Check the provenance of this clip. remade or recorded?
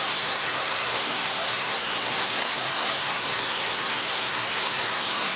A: remade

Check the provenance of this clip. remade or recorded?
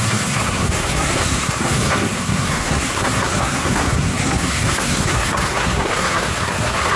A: remade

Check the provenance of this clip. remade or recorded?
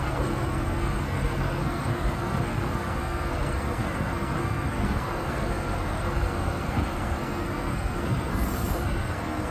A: remade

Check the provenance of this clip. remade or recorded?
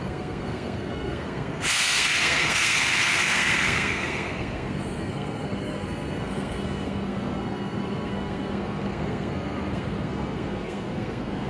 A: remade